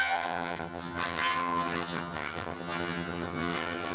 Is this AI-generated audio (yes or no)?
yes